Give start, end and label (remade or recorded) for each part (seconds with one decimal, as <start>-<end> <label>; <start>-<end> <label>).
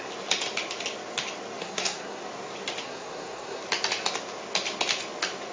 0.0-1.6 recorded; 1.6-2.2 remade; 2.2-2.8 recorded; 2.8-3.6 remade; 3.6-5.5 recorded